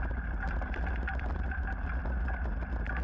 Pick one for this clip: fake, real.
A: real